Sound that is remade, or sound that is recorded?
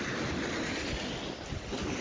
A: recorded